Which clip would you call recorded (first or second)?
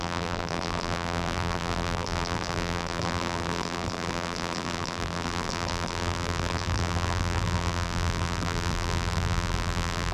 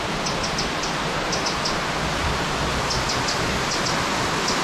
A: second